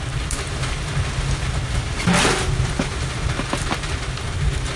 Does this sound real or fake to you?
real